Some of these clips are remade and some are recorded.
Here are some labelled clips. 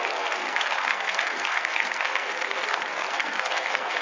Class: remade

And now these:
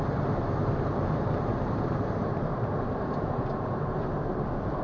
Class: remade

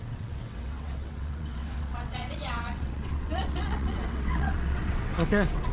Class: remade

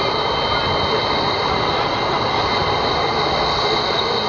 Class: recorded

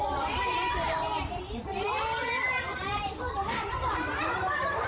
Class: remade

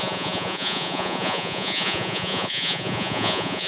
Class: remade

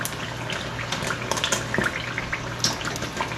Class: recorded